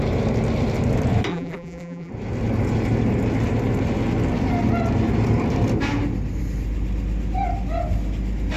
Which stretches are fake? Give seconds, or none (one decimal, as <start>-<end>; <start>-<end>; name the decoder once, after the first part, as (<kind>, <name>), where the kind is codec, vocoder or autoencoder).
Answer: 1.3-2.1 (vocoder, BigVGAN v2)